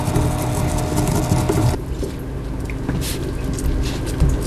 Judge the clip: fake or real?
real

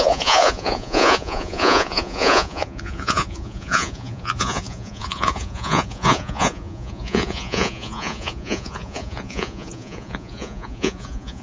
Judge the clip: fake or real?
fake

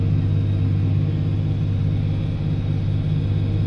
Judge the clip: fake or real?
real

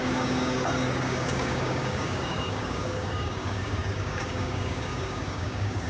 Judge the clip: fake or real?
fake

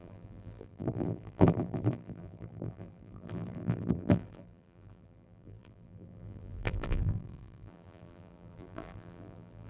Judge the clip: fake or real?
fake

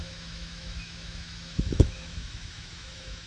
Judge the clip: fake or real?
fake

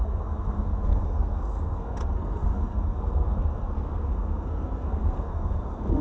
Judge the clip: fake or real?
fake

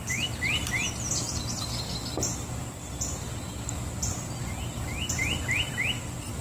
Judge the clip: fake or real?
real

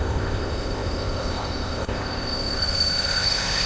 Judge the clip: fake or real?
fake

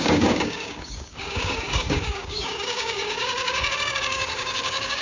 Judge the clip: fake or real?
fake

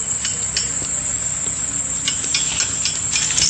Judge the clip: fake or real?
real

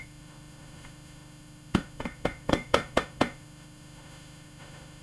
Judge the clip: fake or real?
fake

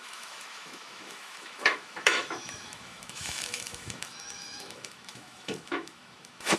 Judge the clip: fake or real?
fake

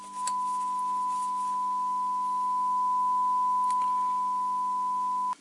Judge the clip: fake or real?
real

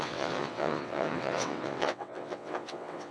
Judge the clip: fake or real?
fake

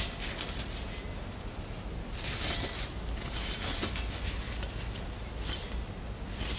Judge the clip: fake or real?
real